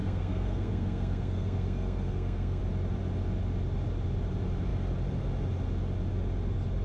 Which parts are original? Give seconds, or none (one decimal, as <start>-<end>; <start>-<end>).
2.6-6.8